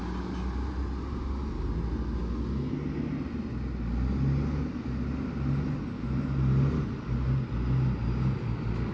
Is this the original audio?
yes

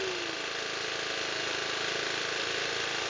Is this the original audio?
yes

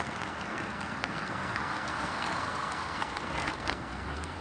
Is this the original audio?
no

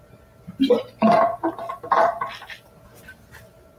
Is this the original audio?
yes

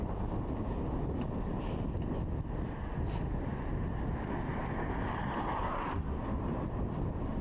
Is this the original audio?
yes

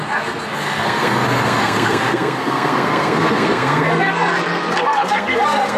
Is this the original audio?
no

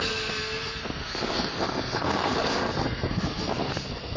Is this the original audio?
no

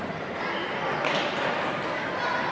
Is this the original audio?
yes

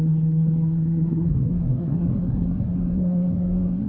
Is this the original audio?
no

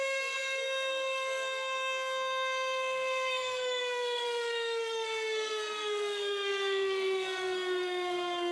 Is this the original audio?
no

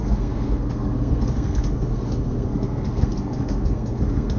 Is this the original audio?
no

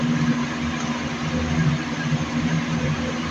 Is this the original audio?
yes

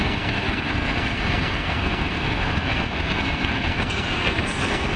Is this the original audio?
no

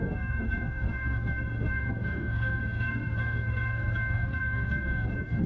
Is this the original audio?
no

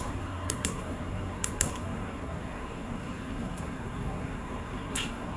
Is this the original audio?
no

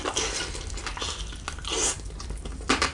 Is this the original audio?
yes